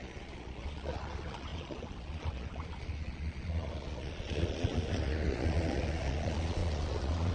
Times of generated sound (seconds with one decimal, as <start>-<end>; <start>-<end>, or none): 0.0-7.3